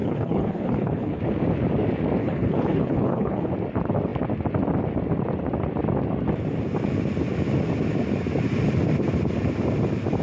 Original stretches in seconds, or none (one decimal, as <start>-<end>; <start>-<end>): 1.2-2.2; 3.5-10.2